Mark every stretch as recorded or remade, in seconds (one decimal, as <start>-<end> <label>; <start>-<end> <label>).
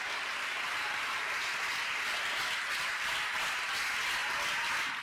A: 0.0-5.0 recorded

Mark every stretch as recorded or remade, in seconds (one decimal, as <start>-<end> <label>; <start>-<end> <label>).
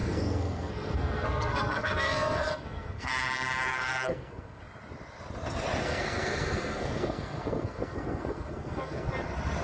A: 0.0-3.1 remade; 3.1-3.7 recorded; 3.7-4.6 remade; 4.6-5.8 recorded; 5.8-9.1 remade; 9.1-9.6 recorded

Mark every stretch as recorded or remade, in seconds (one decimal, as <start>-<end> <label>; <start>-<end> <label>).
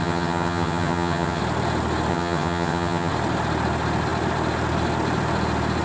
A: 0.0-1.4 remade; 1.4-2.1 recorded; 2.1-3.1 remade; 3.1-5.8 recorded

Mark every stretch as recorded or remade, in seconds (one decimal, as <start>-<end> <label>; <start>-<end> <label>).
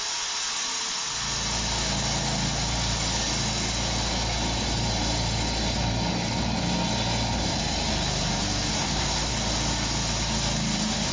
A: 0.0-8.8 recorded; 8.8-9.3 remade; 9.3-11.1 recorded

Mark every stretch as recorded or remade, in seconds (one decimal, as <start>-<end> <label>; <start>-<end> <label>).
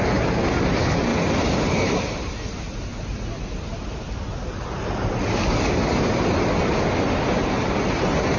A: 0.0-8.4 recorded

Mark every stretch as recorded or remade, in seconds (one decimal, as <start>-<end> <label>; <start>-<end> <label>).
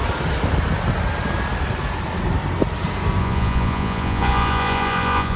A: 0.0-3.2 recorded; 3.2-5.4 remade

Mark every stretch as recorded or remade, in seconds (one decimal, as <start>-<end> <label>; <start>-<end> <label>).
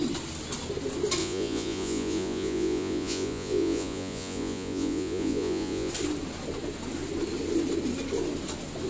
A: 0.0-1.2 recorded; 1.2-5.9 remade; 5.9-8.9 recorded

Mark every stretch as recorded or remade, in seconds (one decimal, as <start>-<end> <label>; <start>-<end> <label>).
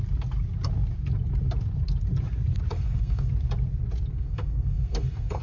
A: 0.0-2.7 recorded; 2.7-3.3 remade; 3.3-4.1 recorded; 4.1-5.4 remade